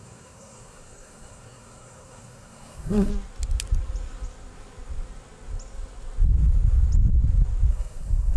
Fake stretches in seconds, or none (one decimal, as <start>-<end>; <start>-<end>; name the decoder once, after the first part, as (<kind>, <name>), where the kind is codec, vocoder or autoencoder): 0.0-3.1 (codec, SNAC); 7.7-8.4